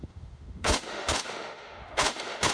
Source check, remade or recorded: remade